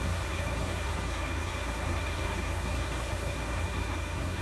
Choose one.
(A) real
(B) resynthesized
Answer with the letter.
B